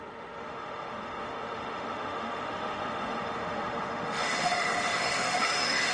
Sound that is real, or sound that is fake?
fake